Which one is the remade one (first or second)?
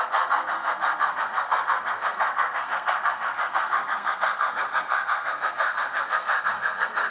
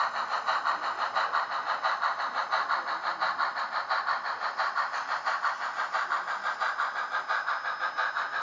first